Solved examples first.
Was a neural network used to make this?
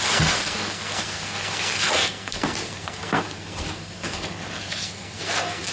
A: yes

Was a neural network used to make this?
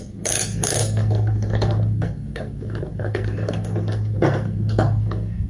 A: yes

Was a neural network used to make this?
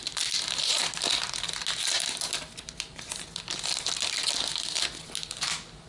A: no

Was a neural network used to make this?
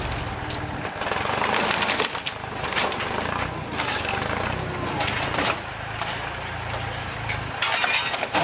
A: no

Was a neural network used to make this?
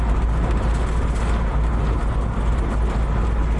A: no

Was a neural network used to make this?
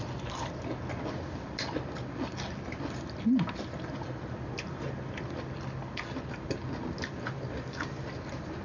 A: no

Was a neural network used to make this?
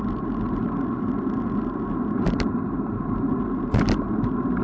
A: no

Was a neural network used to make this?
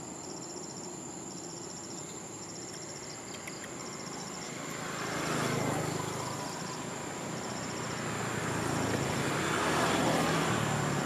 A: no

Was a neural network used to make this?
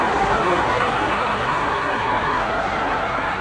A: yes